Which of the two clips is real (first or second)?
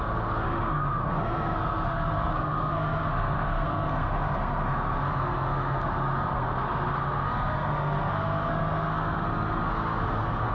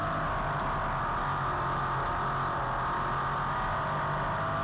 second